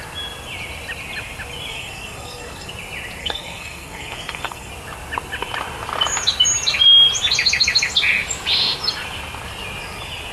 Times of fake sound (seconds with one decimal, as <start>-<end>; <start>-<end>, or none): 1.7-2.7; 3.2-4.7